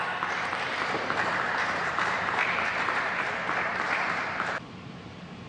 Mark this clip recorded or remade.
remade